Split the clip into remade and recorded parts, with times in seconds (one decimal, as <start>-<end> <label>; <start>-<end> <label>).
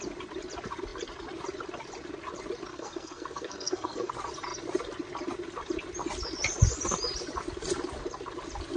0.0-2.7 recorded; 2.7-4.1 remade; 4.1-8.8 recorded